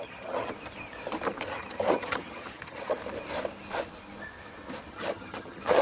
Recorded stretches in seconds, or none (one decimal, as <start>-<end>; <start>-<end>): 0.5-1.5; 3.0-4.9